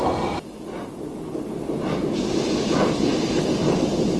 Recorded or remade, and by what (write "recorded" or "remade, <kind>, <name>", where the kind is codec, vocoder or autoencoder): recorded